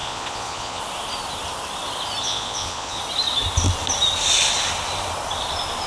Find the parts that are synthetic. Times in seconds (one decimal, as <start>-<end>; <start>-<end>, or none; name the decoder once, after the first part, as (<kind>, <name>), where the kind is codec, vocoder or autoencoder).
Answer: 0.0-0.8 (vocoder, Vocos); 2.2-3.0